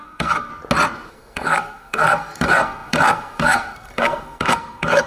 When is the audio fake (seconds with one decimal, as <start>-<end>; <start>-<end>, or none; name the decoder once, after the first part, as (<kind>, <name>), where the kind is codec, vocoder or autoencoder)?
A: 0.0-0.5 (codec, SNAC); 1.1-5.1